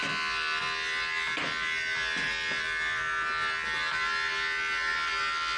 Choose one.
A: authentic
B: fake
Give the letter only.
A